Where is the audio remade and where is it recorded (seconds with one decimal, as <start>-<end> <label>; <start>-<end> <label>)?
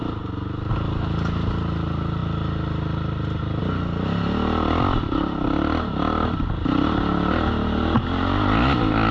0.0-9.1 recorded